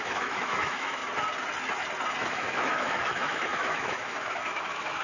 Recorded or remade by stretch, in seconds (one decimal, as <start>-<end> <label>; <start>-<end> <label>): 0.0-1.0 remade; 1.0-2.3 recorded; 2.3-5.0 remade